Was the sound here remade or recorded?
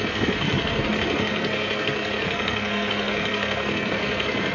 remade